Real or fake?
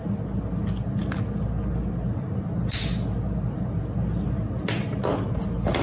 real